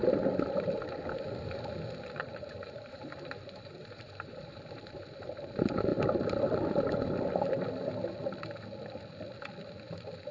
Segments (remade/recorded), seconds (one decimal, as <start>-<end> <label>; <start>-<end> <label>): 0.0-2.2 recorded; 2.2-5.9 remade; 5.9-10.3 recorded